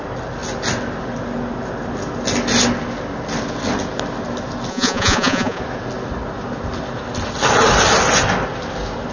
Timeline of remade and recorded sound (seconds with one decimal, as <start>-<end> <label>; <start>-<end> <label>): 0.0-4.7 recorded; 4.7-5.6 remade; 5.6-9.1 recorded